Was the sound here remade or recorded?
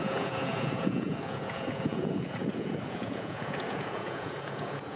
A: remade